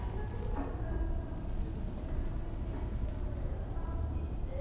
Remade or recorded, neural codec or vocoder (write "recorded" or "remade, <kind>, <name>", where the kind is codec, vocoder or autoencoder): recorded